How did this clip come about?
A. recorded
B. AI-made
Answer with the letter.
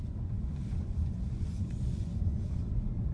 B